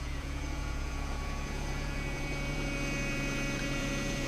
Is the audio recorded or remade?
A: remade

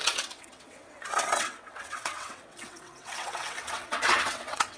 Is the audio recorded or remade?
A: remade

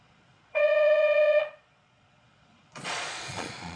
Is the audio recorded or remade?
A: remade